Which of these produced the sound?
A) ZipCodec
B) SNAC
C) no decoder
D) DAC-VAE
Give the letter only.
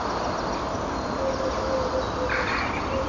C